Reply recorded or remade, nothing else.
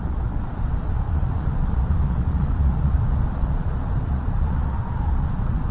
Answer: remade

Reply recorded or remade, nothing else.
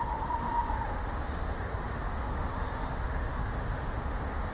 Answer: remade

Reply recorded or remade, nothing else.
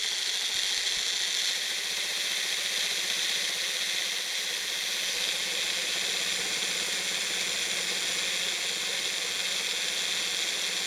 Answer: recorded